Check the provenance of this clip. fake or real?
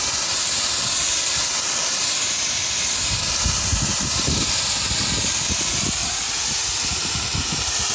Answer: real